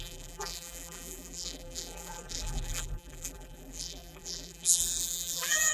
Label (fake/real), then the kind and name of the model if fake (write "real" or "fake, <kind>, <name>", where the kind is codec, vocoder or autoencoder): fake, vocoder, BigVGAN v2